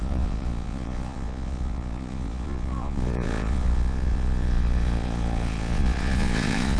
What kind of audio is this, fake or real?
fake